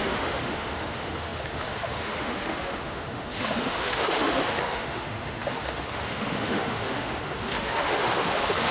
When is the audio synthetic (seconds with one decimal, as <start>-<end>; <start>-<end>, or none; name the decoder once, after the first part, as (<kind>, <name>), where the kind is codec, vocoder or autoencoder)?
0.0-8.7 (autoencoder, DAC-VAE)

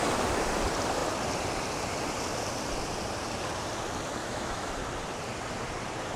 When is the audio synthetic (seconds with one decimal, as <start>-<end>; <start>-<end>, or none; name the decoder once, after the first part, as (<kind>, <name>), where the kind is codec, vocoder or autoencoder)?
4.2-4.7 (autoencoder, DAC-VAE)